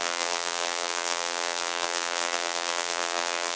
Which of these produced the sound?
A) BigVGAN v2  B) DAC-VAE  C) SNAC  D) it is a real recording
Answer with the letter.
A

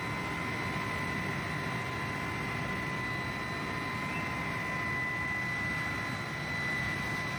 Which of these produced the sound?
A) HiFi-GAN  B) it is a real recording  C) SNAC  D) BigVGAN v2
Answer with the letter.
B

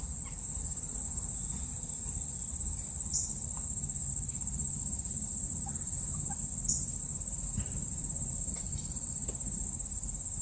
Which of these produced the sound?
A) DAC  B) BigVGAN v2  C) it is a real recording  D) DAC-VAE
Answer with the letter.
B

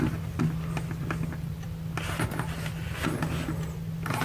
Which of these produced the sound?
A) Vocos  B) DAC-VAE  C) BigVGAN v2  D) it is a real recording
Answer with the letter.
D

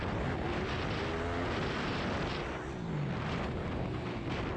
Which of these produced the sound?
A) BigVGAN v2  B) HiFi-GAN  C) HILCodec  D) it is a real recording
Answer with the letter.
D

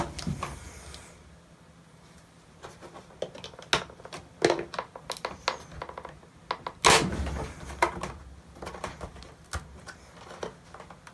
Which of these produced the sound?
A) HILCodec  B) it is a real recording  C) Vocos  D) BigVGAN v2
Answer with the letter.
B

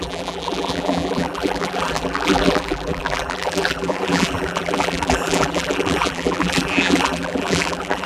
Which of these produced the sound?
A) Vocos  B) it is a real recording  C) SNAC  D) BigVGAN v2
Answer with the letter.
D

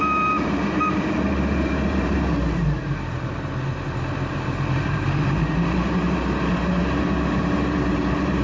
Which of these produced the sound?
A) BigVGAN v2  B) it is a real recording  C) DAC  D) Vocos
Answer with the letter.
A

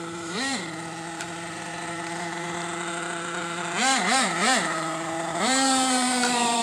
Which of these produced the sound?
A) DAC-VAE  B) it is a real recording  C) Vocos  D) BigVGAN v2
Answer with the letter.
D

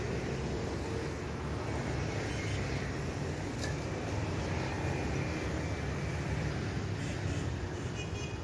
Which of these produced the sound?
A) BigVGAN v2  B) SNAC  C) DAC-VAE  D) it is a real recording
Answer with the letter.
D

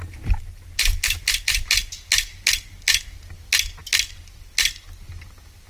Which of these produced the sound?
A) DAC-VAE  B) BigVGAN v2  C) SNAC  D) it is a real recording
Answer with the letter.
D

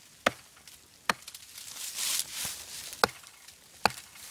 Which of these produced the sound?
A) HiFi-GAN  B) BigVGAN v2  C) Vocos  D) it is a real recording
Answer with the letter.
D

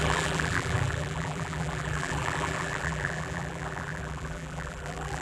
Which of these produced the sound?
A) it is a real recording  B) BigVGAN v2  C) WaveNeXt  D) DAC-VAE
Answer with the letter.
B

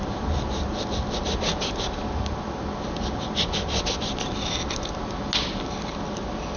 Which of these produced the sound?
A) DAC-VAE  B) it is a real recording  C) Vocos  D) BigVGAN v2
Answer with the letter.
B